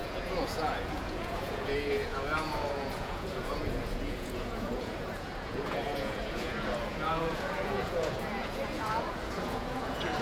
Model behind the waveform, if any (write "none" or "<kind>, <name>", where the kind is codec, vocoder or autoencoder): vocoder, Vocos